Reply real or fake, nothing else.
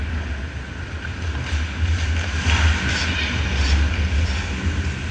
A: real